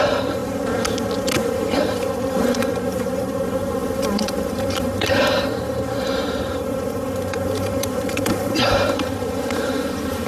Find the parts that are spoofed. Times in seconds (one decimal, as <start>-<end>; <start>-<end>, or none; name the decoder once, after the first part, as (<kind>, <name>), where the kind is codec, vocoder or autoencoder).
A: 0.0-0.4 (vocoder, BigVGAN v2); 1.5-10.3